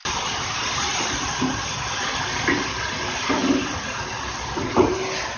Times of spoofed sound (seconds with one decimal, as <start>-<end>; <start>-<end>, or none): none